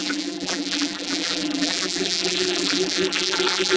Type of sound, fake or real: fake